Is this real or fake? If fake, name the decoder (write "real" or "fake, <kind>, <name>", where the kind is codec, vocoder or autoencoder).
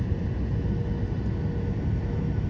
real